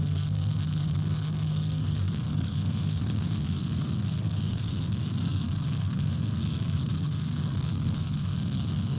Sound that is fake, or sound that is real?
fake